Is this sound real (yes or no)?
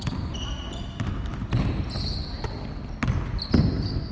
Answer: yes